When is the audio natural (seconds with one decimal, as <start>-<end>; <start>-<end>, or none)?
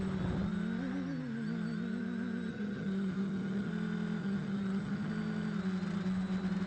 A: 0.0-2.5; 3.7-4.2; 5.1-6.7